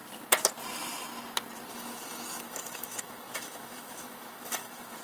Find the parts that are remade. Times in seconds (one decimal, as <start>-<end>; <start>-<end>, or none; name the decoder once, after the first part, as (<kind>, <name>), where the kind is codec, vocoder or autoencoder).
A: 1.7-5.0 (autoencoder, DAC-VAE)